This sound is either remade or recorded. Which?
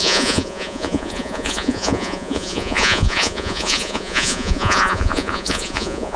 remade